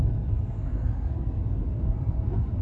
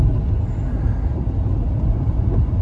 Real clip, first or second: second